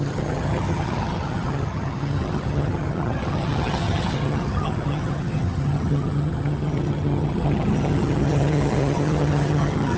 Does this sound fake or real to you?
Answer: fake